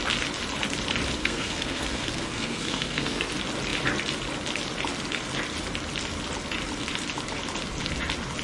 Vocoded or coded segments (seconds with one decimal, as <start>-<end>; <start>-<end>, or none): 1.2-3.3